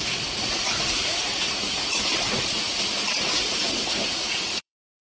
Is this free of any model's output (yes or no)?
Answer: no